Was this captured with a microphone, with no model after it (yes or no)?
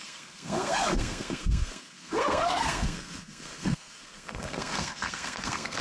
no